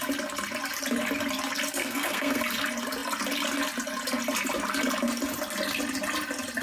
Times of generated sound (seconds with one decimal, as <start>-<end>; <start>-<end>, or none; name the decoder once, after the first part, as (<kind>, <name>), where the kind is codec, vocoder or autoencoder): 1.8-2.4 (codec, SNAC)